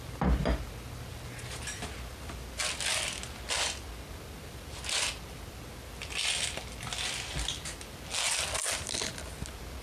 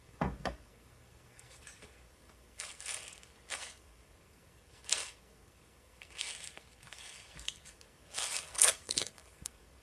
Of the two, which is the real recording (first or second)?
first